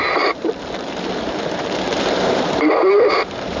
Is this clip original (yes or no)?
no